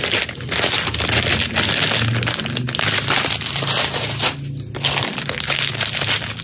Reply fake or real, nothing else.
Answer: real